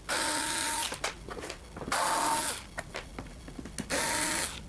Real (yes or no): yes